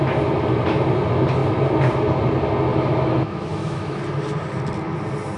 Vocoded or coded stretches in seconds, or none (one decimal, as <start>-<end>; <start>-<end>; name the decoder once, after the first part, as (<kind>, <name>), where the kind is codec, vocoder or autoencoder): 2.7-4.0 (autoencoder, DAC-VAE)